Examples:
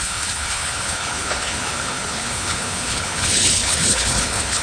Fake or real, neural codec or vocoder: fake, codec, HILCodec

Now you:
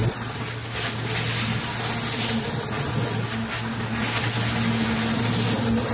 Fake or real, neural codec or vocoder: real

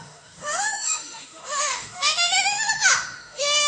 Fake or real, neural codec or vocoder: fake, autoencoder, DAC-VAE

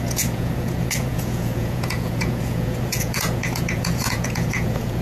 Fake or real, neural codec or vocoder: fake, vocoder, Vocos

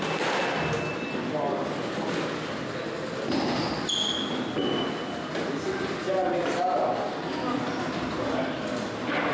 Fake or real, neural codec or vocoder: real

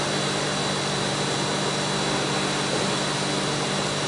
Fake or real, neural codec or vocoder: real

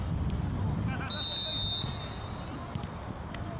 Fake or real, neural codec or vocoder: real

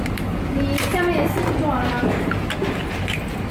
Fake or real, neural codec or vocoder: real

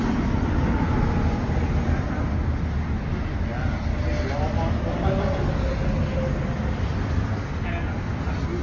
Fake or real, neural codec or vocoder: real